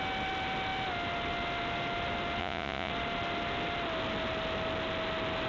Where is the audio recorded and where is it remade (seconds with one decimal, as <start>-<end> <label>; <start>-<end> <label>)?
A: 0.0-2.4 recorded; 2.4-2.9 remade; 2.9-5.5 recorded